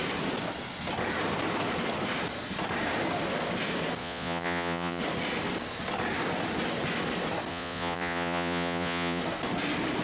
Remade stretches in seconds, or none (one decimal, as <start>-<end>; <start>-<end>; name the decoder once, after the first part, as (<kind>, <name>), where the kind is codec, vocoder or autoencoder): 4.0-5.0 (vocoder, Vocos); 7.5-9.2